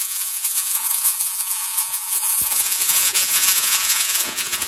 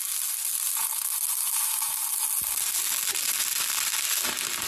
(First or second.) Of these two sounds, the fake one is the first